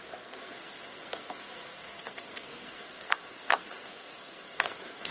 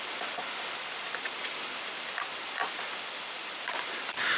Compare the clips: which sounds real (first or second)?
second